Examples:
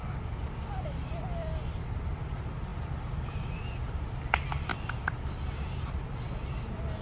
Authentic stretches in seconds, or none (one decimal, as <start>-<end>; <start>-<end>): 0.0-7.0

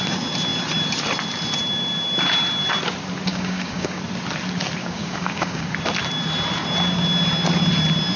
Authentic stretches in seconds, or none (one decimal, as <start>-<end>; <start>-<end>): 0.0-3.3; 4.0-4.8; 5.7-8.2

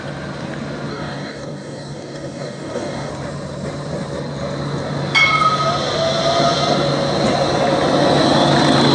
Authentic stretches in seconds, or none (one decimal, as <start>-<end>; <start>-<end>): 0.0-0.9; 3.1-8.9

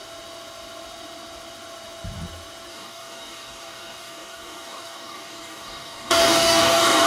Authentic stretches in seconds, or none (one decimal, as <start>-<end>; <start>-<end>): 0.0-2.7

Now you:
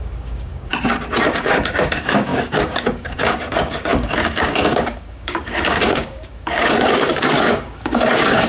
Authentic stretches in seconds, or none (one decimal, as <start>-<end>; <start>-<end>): 0.7-1.3